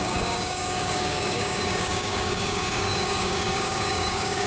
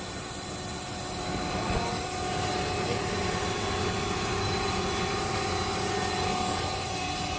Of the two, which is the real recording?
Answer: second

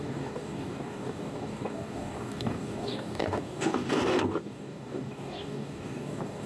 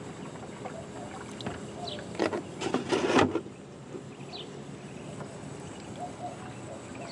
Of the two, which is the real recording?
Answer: second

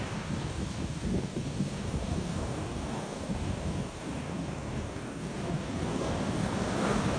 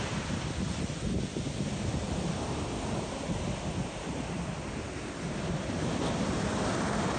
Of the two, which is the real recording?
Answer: second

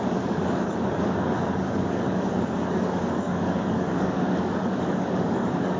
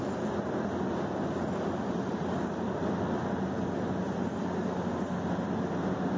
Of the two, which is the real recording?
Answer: second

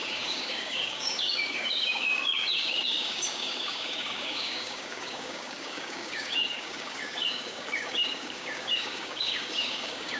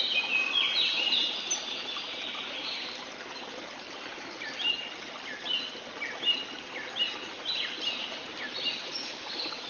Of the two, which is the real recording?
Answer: second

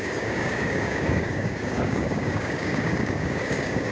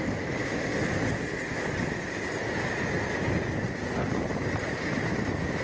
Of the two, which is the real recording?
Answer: second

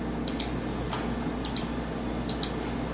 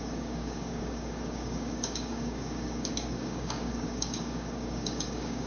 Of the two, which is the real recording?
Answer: first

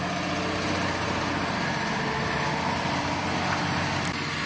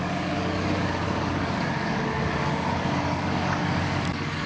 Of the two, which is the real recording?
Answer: first